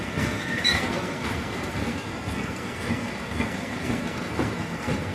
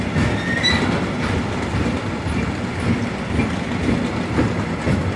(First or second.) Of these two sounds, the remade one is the first